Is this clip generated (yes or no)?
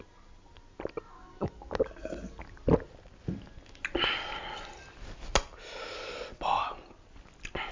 no